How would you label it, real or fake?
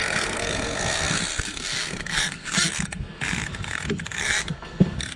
fake